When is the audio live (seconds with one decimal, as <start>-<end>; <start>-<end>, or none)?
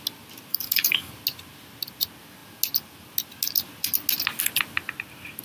0.0-0.5; 1.1-5.4